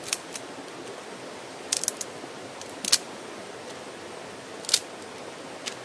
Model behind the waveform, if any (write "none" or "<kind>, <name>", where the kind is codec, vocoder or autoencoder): none